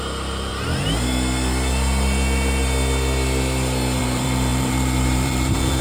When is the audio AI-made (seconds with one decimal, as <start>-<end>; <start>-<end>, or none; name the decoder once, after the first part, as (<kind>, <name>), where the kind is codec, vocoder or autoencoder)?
0.0-0.5 (vocoder, BigVGAN v2); 4.0-5.8